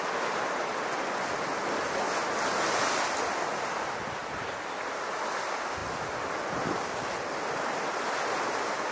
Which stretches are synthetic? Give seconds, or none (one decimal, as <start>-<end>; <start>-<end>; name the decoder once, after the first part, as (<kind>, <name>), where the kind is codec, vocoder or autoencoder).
4.2-5.0 (vocoder, BigVGAN v2)